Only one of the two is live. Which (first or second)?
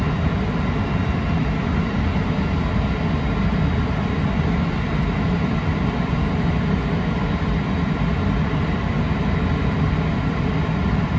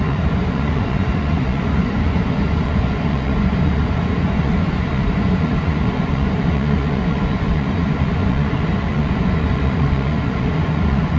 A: first